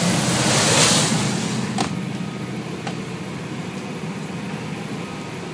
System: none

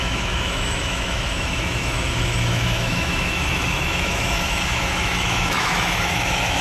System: autoencoder, DAC-VAE